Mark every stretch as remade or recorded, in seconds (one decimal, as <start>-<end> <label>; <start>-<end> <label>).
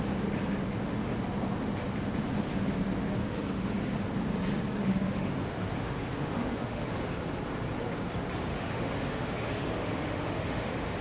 0.0-3.2 recorded; 3.2-4.0 remade; 4.0-4.9 recorded; 4.9-6.9 remade; 6.9-8.5 recorded; 8.5-11.0 remade